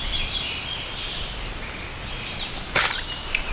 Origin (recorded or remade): recorded